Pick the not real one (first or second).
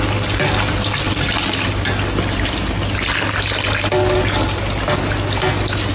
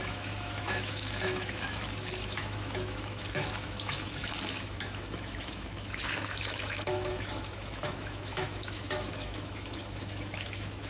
second